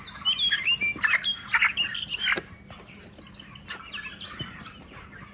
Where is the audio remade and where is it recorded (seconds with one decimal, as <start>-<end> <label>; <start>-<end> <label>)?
0.0-5.3 recorded